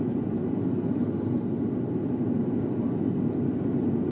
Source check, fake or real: real